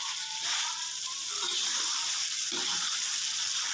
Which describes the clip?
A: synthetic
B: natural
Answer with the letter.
A